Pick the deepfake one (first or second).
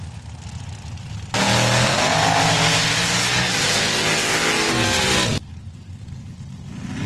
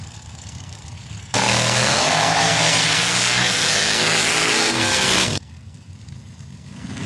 second